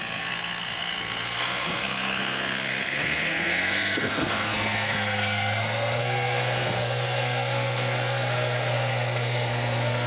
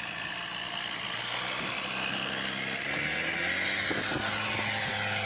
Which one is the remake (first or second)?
first